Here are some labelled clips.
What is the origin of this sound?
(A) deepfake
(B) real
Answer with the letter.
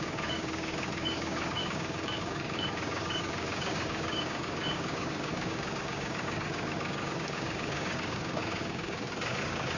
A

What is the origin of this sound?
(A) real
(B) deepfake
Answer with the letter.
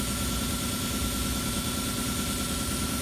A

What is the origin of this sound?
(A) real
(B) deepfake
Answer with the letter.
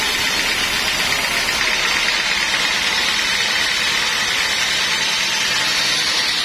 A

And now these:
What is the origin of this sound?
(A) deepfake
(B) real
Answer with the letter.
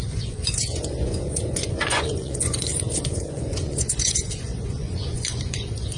A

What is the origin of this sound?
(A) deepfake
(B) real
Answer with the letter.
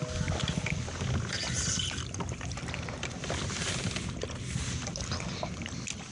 B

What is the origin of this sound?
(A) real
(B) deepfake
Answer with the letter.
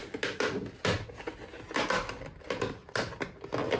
A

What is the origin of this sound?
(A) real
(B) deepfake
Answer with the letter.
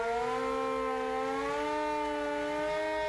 A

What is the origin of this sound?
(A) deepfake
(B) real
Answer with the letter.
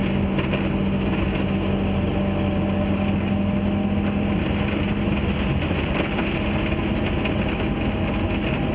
B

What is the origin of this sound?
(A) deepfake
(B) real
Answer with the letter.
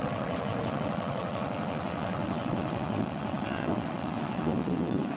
A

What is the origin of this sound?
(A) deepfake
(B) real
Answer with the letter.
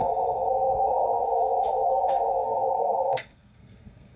A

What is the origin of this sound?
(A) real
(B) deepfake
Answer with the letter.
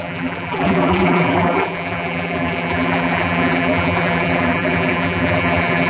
B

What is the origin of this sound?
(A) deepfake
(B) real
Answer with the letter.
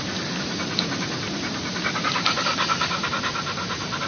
A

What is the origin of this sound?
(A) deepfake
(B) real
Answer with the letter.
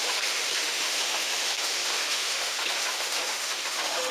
A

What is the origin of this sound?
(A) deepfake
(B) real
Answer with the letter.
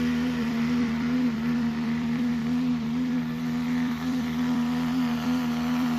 A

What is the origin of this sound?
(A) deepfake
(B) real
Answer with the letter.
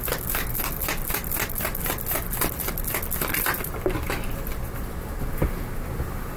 B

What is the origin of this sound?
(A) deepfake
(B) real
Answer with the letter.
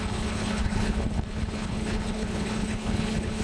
A